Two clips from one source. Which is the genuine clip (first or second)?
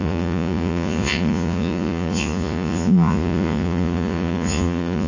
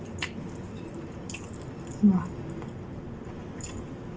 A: second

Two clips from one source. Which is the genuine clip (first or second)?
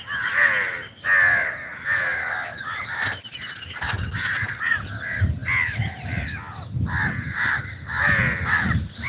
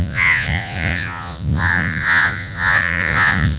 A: first